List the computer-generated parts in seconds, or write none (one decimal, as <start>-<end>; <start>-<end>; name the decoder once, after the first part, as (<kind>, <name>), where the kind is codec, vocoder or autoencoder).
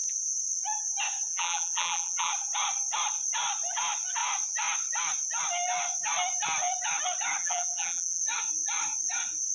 1.3-2.3 (vocoder, BigVGAN v2); 7.4-8.2